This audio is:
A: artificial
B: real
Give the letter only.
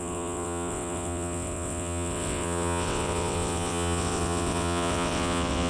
A